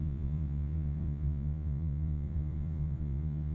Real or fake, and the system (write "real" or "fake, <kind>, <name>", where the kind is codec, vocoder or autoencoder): fake, vocoder, Vocos